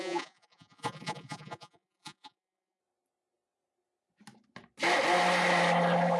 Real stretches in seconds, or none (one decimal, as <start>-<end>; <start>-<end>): 2.8-6.2